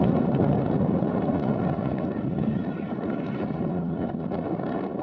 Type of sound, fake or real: fake